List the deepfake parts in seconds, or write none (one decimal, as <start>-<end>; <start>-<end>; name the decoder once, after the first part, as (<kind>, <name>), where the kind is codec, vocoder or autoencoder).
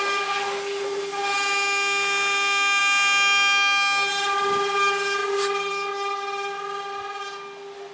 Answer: none